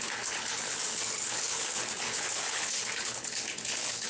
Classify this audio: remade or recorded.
remade